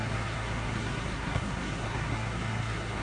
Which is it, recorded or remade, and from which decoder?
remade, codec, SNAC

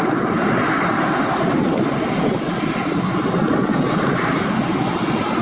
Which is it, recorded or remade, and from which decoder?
remade, vocoder, BigVGAN v2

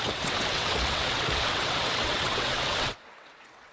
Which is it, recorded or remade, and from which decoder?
remade, vocoder, WaveNeXt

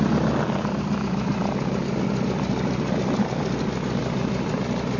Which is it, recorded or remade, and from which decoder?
recorded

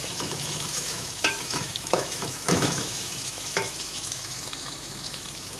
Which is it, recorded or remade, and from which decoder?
remade, autoencoder, DAC-VAE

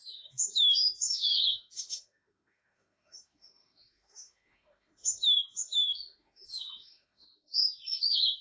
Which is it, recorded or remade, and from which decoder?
remade, autoencoder, DAC-VAE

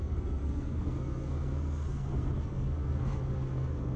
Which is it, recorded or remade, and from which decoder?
remade, codec, SNAC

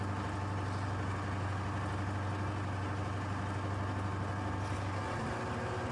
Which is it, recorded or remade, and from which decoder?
recorded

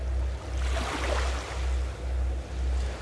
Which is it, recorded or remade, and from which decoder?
recorded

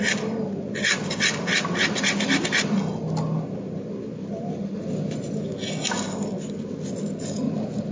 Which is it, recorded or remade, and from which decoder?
recorded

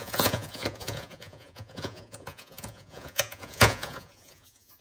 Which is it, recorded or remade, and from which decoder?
remade, vocoder, Vocos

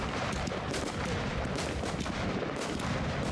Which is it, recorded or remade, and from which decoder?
recorded